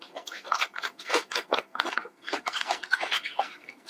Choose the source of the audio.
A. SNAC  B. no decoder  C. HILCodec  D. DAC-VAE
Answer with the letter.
A